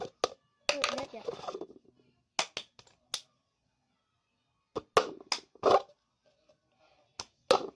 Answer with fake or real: real